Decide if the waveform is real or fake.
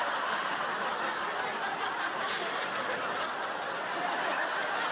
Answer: real